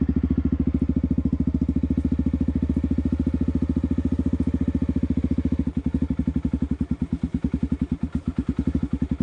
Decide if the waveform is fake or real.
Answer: real